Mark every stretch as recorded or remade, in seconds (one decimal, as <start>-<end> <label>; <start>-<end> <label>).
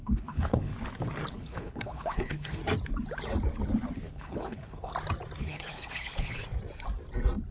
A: 0.0-0.7 remade; 0.7-1.3 recorded; 1.3-2.6 remade; 2.6-4.1 recorded; 4.1-4.9 remade; 4.9-5.4 recorded; 5.4-6.4 remade; 6.4-7.5 recorded